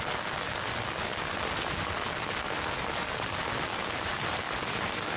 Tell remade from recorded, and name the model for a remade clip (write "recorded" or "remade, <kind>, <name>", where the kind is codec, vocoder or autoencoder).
recorded